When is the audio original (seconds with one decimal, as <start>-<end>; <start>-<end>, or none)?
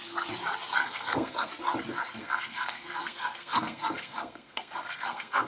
0.0-0.8; 1.5-2.2